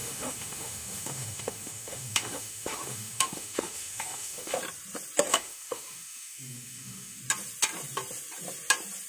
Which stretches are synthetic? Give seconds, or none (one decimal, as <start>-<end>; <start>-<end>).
0.0-4.6; 5.3-7.2